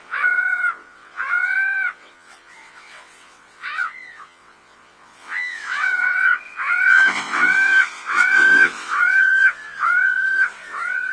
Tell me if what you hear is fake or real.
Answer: fake